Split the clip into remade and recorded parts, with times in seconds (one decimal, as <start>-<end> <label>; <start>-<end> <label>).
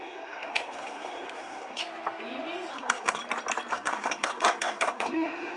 0.0-1.8 remade; 1.8-2.7 recorded; 2.7-3.2 remade; 3.2-3.7 recorded; 3.7-5.6 remade